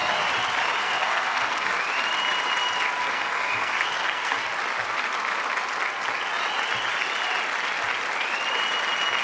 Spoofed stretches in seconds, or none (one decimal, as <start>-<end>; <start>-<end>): 0.8-1.7; 3.0-4.5